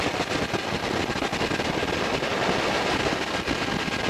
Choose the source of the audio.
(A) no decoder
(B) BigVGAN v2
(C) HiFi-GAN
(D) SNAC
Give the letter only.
A